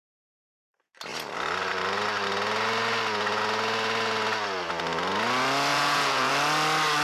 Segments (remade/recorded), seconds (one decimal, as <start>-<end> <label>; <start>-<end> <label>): 0.0-5.7 recorded; 5.7-6.3 remade; 6.3-7.0 recorded